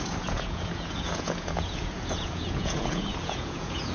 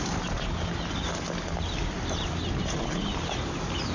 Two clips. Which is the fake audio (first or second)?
first